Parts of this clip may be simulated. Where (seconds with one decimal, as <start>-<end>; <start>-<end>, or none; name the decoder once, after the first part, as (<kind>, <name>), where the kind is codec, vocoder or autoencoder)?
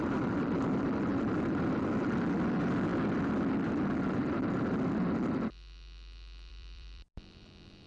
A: 0.0-4.2 (vocoder, BigVGAN v2); 6.5-7.9